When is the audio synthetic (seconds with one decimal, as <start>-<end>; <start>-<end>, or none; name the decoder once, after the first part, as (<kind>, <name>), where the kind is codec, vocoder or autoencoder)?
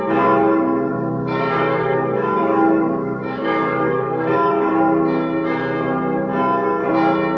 0.9-4.7 (codec, DAC)